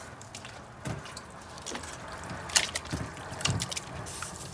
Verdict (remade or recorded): remade